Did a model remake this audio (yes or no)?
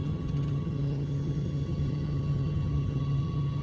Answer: yes